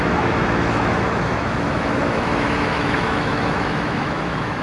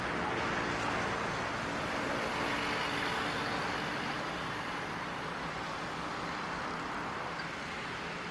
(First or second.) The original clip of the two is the second